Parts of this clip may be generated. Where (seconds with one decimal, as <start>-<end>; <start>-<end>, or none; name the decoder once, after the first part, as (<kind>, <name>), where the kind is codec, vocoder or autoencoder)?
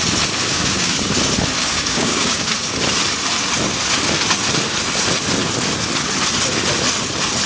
0.4-1.1 (codec, DAC); 1.6-2.5